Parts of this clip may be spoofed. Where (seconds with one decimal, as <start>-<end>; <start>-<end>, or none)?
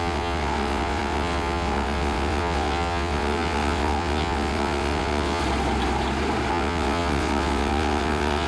0.0-5.4; 6.5-8.5